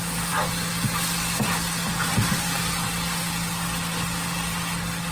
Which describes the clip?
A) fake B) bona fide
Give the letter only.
B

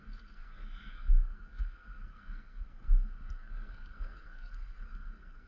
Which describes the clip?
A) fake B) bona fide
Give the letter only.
A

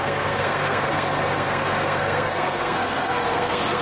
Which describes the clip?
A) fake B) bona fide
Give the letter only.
A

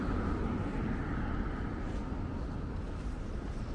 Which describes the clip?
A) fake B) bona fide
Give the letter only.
B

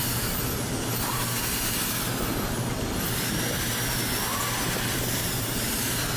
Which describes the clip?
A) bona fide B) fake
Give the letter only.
A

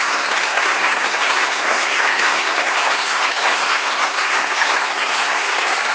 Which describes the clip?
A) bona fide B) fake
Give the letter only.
B